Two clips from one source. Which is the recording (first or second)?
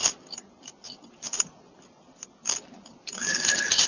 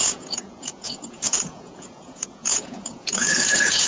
first